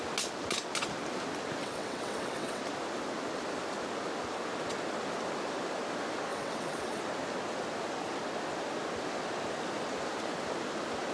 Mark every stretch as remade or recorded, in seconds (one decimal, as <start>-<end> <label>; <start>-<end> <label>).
0.0-1.6 recorded; 1.6-2.6 remade; 2.6-6.3 recorded; 6.3-7.0 remade; 7.0-11.1 recorded